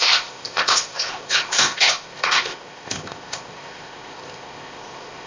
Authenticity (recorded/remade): remade